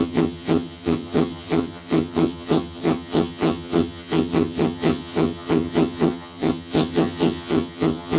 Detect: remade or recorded remade